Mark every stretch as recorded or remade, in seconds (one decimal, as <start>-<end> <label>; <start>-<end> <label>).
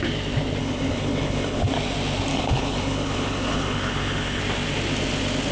0.0-0.6 recorded; 0.6-1.7 remade; 1.7-2.3 recorded; 2.3-4.4 remade; 4.4-5.5 recorded